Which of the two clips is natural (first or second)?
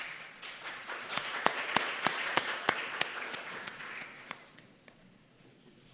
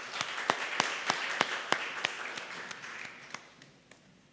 second